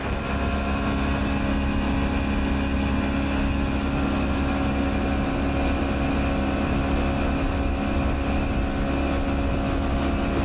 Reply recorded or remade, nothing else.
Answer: recorded